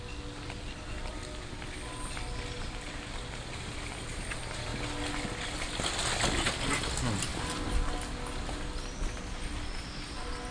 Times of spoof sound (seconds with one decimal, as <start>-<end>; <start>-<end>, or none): none